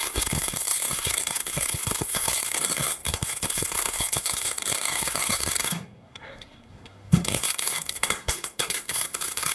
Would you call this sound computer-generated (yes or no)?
yes